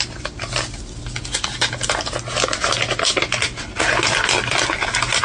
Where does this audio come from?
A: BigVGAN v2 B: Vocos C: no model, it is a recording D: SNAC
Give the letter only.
C